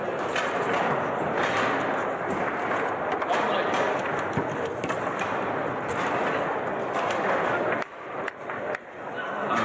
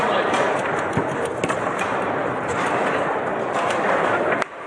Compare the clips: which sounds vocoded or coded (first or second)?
second